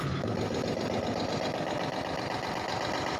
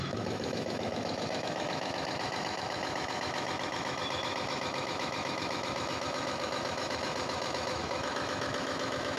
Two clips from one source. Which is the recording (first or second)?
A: first